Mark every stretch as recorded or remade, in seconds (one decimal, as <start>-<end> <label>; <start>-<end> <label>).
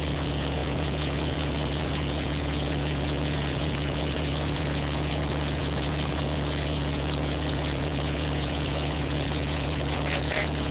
0.0-10.7 remade